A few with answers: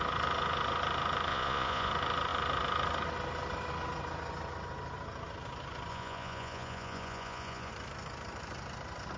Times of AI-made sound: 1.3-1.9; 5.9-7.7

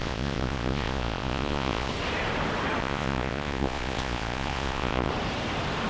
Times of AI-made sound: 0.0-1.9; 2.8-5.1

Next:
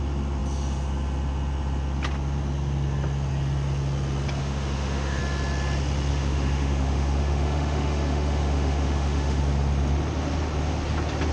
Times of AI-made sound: 4.4-5.2; 6.1-9.4